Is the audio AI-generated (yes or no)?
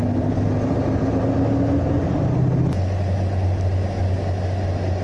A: no